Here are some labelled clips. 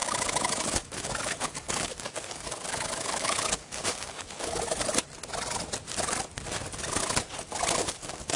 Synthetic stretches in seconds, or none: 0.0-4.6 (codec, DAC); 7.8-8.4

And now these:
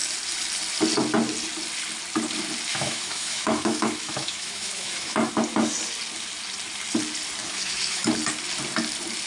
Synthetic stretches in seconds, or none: 2.7-5.3 (autoencoder, DAC-VAE); 7.4-8.1

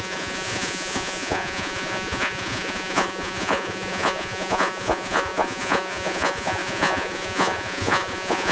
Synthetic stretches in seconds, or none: 0.0-8.5 (vocoder, Vocos)

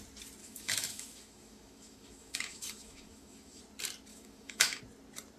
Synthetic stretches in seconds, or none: 0.4-3.6 (autoencoder, DAC-VAE); 4.1-4.8